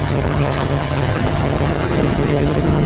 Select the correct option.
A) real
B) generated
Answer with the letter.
B